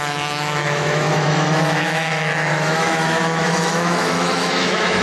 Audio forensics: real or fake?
fake